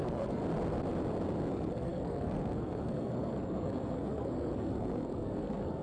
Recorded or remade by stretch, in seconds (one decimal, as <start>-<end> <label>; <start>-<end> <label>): 0.0-0.4 remade; 0.4-1.5 recorded; 1.5-5.8 remade